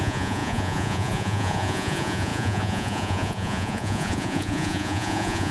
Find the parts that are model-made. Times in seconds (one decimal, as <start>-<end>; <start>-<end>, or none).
0.0-5.5